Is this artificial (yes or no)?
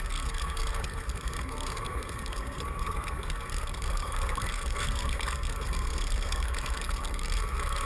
yes